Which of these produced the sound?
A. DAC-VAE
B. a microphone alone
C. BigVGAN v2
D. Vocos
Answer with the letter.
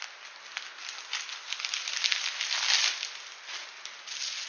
B